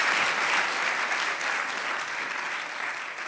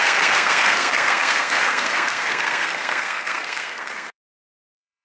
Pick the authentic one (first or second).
first